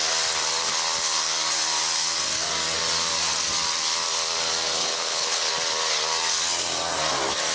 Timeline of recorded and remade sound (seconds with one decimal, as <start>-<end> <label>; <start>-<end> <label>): 0.0-4.8 recorded; 4.8-5.5 remade; 5.5-7.5 recorded